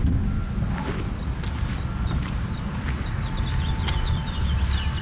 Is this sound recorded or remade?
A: recorded